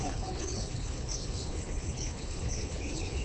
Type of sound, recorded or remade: remade